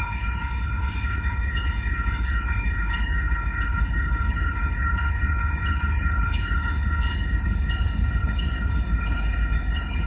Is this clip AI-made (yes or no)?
yes